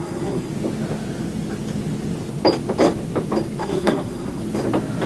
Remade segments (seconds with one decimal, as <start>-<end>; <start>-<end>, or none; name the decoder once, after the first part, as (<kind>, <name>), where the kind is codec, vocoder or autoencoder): 0.0-0.5 (codec, SNAC); 3.6-4.4